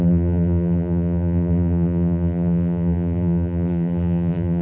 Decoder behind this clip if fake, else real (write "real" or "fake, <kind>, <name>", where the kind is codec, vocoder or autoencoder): fake, vocoder, BigVGAN v2